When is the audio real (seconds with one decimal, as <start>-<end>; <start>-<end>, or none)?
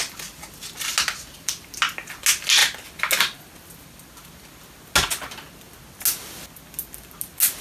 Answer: 0.0-7.6